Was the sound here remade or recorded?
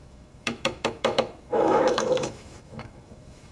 remade